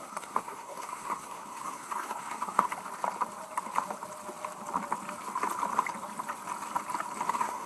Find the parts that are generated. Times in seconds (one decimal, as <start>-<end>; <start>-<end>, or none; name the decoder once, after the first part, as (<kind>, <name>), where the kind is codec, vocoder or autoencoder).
0.0-2.7 (codec, SNAC); 7.3-7.7